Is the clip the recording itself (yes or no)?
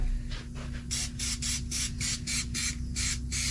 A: yes